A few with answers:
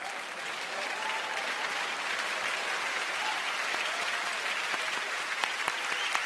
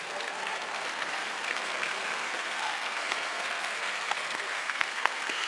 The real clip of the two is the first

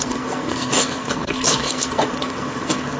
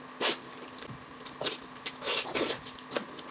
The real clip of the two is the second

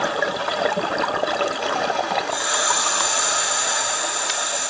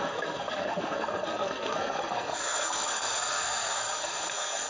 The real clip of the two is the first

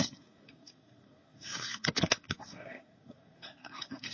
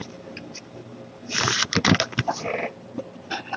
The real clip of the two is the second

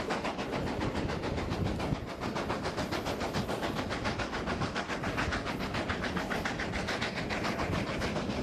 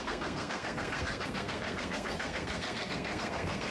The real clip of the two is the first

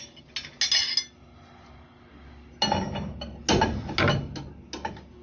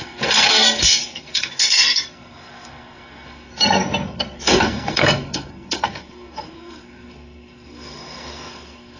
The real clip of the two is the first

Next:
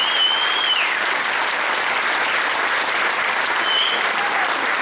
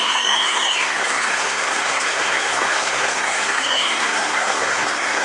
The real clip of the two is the first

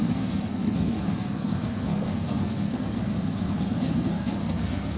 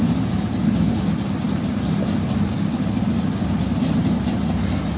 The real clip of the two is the second